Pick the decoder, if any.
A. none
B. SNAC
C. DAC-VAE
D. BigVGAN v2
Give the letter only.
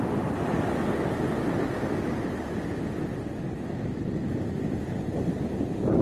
A